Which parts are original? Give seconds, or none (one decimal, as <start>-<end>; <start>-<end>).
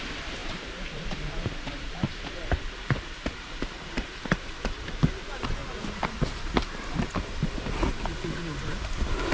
0.0-0.4; 5.0-9.3